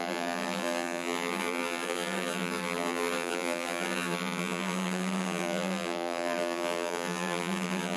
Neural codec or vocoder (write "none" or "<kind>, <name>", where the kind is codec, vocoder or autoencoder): vocoder, BigVGAN v2